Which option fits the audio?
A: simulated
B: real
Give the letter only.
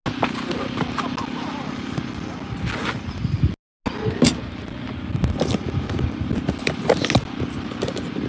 B